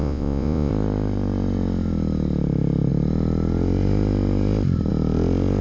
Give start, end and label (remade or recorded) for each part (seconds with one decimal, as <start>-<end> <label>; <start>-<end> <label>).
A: 0.0-0.7 remade; 0.7-5.6 recorded